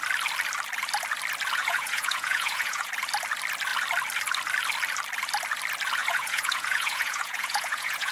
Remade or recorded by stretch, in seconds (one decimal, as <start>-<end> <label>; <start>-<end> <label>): 0.0-1.6 recorded; 1.6-2.9 remade; 2.9-6.0 recorded; 6.0-8.1 remade